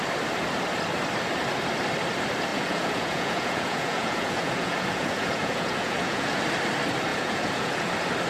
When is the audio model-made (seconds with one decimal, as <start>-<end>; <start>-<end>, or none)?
2.5-6.4; 7.1-7.9

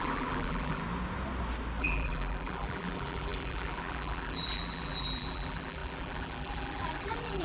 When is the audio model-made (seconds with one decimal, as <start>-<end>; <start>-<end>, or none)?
0.0-0.8; 1.8-7.4

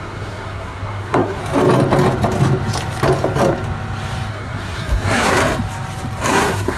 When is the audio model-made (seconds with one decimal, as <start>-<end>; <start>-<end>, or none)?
0.0-1.4; 4.3-5.4; 6.3-6.8

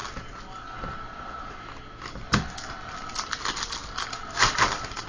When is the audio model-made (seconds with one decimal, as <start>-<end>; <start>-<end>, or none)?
3.1-5.1

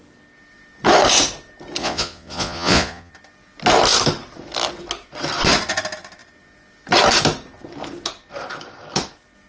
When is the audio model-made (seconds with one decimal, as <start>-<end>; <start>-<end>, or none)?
1.8-3.1

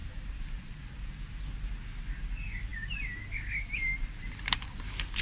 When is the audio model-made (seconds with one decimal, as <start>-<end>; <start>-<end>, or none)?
0.0-1.1

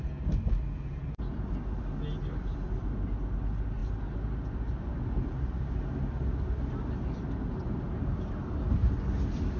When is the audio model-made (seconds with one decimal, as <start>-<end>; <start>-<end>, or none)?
none

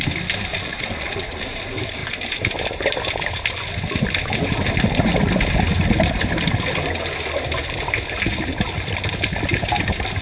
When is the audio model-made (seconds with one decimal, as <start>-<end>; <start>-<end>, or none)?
0.5-1.6